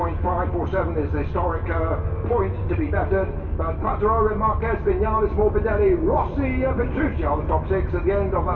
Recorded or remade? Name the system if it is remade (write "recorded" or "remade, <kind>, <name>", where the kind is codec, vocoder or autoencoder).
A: recorded